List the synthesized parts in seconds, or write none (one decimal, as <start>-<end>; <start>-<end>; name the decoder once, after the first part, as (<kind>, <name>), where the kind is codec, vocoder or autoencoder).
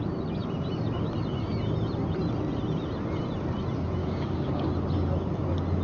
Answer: 4.0-4.7 (codec, DAC)